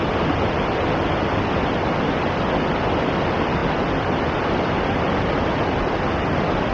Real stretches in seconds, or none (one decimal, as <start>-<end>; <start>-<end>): 0.0-6.7